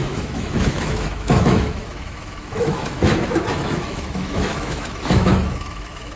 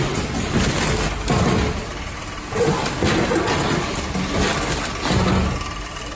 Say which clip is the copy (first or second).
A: first